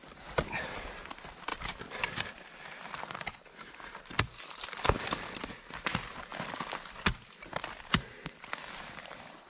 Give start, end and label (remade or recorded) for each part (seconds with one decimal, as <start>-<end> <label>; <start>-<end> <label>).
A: 0.0-9.5 recorded